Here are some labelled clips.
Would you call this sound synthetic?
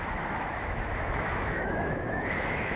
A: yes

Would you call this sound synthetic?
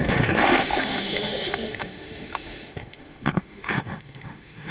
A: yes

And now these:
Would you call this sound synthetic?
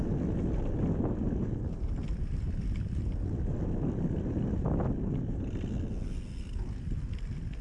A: no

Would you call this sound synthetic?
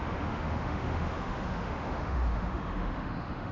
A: yes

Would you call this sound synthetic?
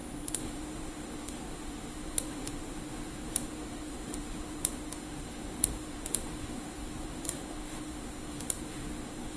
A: yes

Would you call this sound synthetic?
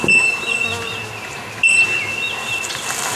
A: no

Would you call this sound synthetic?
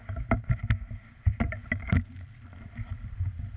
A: no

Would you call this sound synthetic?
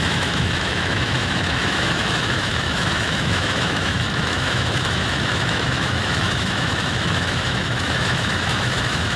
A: yes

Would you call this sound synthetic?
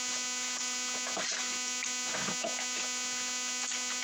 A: no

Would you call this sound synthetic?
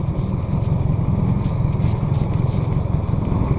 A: no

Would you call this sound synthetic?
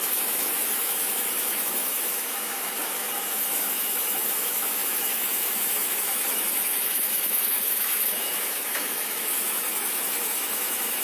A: yes